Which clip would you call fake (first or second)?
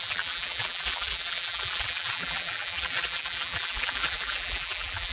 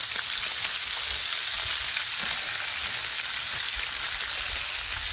first